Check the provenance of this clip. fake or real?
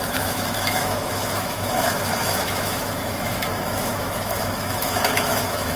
fake